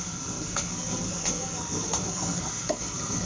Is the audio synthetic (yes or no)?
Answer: yes